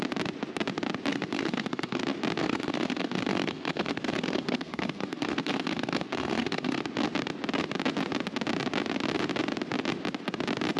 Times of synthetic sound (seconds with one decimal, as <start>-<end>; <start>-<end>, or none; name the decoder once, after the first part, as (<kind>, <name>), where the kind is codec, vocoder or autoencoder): 1.1-2.0 (codec, SNAC); 2.4-6.8